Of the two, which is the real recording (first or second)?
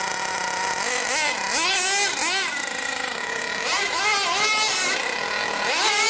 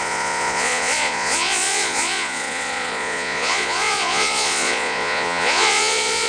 first